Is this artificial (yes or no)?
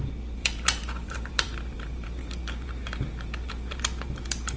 yes